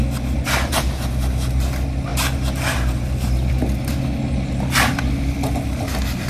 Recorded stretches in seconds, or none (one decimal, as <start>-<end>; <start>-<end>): 0.0-6.3